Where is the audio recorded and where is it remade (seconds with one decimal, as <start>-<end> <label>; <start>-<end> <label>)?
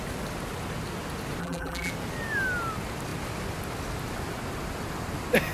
0.0-1.4 recorded; 1.4-1.9 remade; 1.9-5.5 recorded